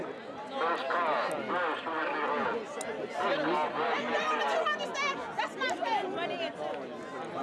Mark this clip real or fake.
real